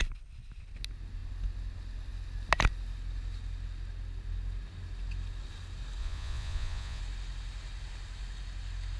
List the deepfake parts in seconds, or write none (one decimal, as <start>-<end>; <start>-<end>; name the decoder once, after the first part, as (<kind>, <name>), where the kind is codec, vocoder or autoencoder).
6.0-7.0 (vocoder, Vocos)